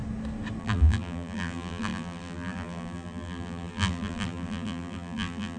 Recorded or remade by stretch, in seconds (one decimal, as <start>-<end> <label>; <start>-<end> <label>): 0.0-0.6 recorded; 0.6-5.6 remade